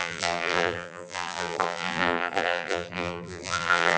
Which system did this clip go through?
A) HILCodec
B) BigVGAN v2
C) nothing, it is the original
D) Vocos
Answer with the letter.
B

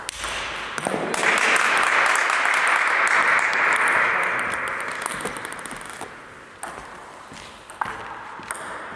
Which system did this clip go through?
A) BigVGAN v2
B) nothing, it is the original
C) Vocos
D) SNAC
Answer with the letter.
B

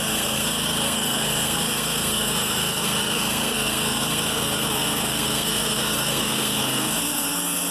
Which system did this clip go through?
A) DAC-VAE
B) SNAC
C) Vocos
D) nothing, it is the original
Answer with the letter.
B